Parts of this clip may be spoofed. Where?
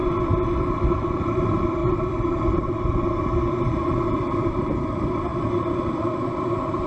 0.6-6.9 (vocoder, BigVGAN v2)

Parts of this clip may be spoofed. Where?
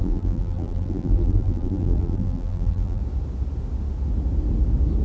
0.0-3.0 (vocoder, BigVGAN v2)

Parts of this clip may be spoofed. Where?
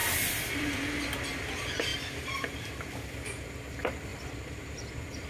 none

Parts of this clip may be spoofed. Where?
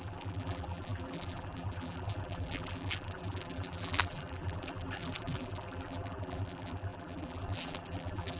0.0-8.4 (vocoder, BigVGAN v2)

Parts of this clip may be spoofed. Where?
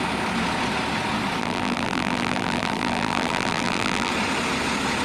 1.4-4.1 (vocoder, BigVGAN v2)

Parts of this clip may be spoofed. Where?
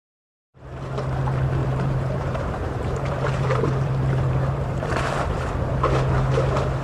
1.6-5.7 (vocoder, BigVGAN v2)